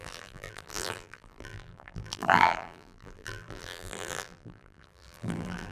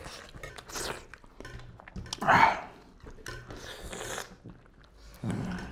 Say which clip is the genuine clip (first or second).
second